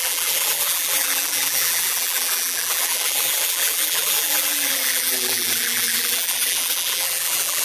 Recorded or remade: remade